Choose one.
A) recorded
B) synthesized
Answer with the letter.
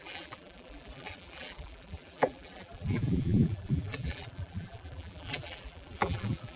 B